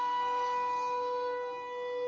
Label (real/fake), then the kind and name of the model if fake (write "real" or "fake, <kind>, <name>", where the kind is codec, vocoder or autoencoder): fake, codec, SNAC